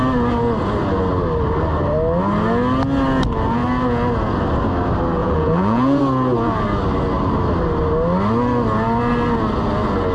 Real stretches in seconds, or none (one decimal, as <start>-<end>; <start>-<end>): 0.0-5.2; 6.0-10.1